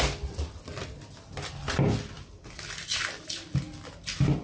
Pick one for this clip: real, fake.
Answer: real